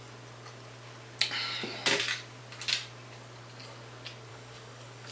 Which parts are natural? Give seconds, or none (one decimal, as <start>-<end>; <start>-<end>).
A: 0.0-4.3